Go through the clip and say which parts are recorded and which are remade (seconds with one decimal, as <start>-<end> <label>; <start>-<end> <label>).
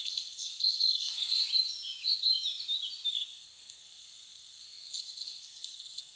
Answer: 0.0-1.4 remade; 1.4-3.1 recorded; 3.1-6.2 remade